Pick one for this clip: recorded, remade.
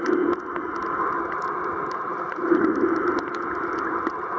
recorded